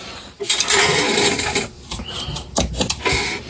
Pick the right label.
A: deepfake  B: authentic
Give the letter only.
A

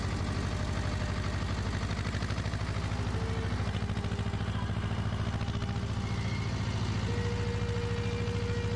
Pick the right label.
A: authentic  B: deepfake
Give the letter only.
A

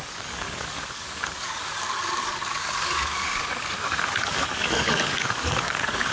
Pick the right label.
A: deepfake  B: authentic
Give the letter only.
A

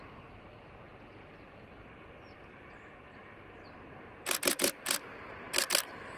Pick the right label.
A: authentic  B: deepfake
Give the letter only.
A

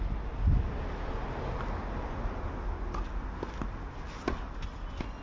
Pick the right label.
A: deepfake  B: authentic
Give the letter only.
B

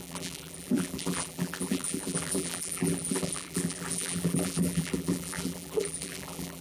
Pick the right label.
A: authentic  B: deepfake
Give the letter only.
B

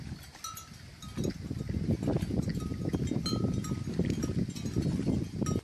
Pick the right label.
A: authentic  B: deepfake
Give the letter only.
A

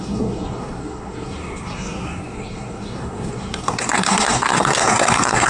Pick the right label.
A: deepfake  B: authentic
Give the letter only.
A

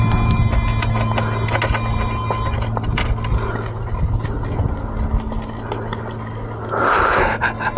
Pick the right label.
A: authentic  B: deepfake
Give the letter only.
A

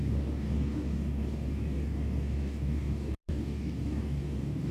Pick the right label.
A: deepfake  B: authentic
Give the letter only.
A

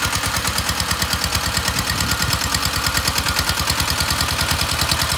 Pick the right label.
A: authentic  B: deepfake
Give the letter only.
A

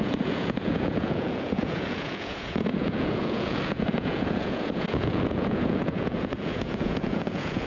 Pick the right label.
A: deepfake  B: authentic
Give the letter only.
A